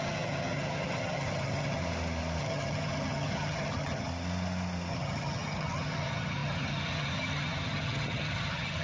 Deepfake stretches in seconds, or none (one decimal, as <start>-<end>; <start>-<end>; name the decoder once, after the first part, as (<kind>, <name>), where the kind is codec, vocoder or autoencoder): 0.0-1.8 (vocoder, HiFi-GAN); 2.4-4.1; 4.9-8.8